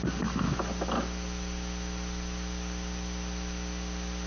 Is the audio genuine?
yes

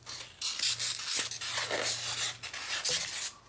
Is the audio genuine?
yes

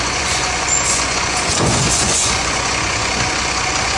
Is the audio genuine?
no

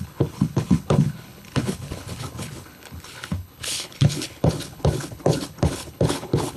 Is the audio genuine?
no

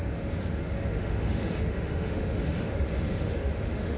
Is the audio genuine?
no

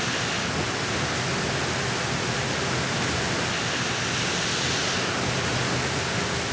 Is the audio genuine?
yes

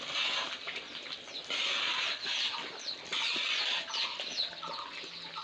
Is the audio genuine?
yes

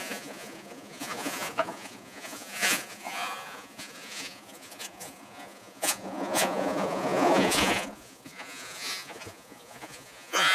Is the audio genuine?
no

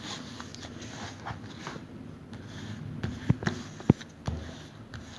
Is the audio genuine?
yes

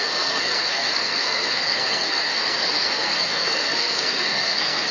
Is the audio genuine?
no